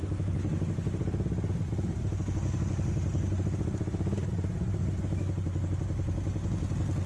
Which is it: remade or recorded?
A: recorded